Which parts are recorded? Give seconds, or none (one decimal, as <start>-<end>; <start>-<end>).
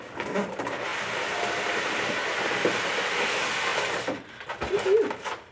0.0-0.9; 3.0-5.5